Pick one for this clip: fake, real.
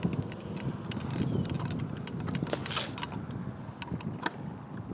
real